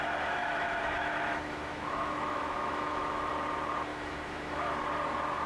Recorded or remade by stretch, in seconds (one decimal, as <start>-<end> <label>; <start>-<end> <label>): 0.0-0.4 recorded; 0.4-3.3 remade; 3.3-3.9 recorded; 3.9-4.6 remade; 4.6-5.5 recorded